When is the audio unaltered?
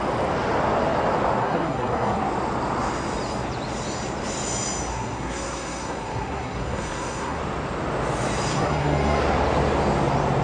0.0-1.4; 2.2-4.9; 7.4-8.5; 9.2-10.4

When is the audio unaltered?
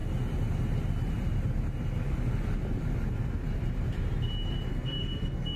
0.0-4.7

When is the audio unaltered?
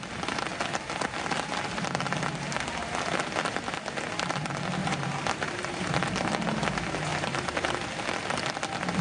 0.0-4.8; 5.9-7.1; 7.7-9.0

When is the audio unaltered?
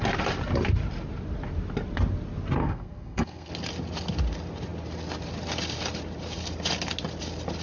0.0-2.6; 3.5-7.6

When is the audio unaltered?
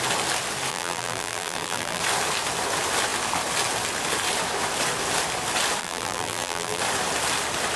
0.0-0.7; 2.0-5.8; 6.8-7.8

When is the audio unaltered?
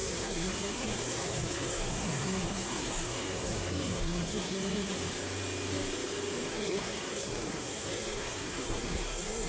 4.9-6.5